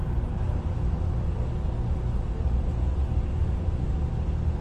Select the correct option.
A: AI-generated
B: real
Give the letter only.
B